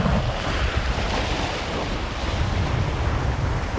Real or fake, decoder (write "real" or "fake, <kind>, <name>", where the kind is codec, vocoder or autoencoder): real